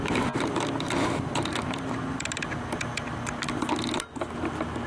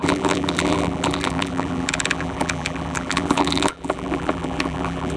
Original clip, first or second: first